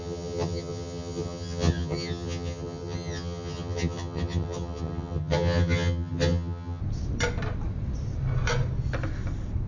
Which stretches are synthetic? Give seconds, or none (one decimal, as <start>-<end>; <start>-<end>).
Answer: 0.0-6.8